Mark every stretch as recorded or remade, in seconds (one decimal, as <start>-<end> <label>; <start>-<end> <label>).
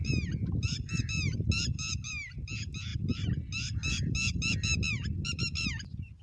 0.0-6.2 recorded